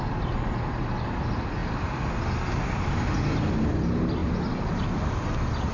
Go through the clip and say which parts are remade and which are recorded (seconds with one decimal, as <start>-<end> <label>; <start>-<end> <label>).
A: 0.0-5.7 recorded